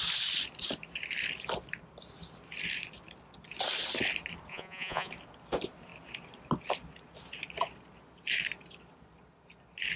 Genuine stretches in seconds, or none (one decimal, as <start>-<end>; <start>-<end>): 0.0-4.5; 5.1-10.0

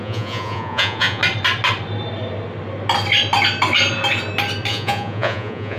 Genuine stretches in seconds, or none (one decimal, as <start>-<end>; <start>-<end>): 1.2-4.7

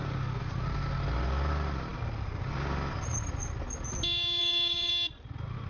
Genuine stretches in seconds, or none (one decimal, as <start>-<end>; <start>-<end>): 0.0-4.4; 4.9-5.7

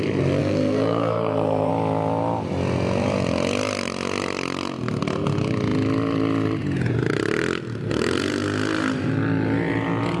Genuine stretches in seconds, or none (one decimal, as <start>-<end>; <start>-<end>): 0.0-0.4; 1.7-10.2

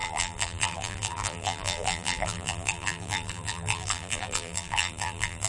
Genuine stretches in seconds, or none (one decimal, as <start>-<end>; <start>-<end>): none